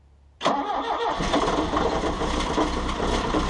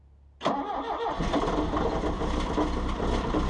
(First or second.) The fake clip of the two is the first